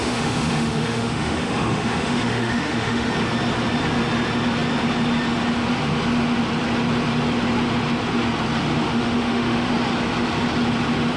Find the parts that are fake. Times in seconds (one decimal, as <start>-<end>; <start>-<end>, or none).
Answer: 0.0-3.1; 8.8-9.7